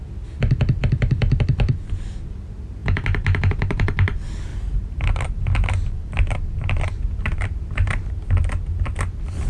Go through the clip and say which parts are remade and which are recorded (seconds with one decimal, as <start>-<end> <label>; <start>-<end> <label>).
0.0-4.5 recorded; 4.5-8.1 remade; 8.1-9.5 recorded